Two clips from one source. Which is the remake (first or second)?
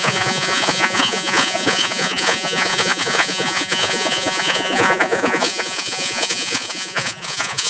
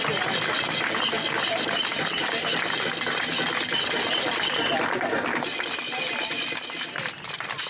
first